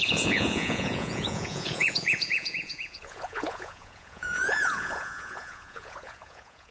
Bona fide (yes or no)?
no